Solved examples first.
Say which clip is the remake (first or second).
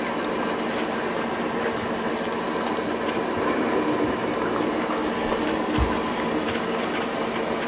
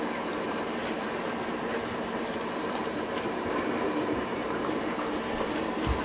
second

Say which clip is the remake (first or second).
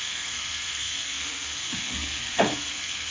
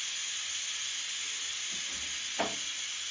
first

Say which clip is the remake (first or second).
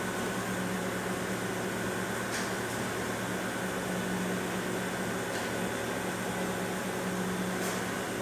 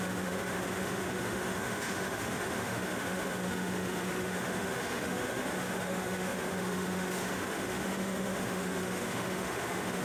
second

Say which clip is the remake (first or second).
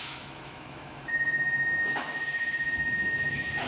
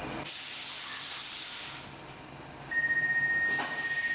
first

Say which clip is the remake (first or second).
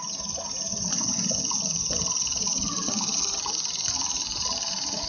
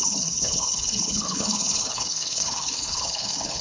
second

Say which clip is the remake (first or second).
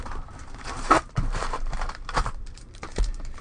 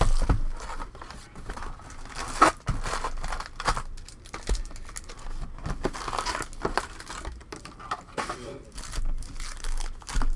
first